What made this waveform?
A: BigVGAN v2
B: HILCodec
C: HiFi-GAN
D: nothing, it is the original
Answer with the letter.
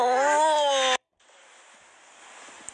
D